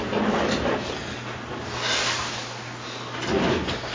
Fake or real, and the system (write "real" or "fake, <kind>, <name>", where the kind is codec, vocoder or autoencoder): real